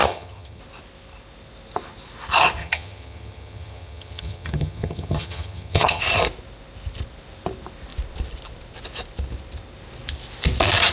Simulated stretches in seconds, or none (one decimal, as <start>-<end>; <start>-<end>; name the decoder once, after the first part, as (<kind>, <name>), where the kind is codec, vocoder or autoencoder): 0.0-0.6 (vocoder, HiFi-GAN); 2.6-6.0